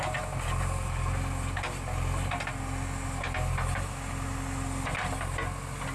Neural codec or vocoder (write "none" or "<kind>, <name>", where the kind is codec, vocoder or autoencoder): none